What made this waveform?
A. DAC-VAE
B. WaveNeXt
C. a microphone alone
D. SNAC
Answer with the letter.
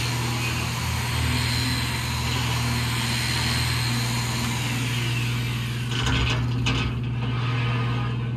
C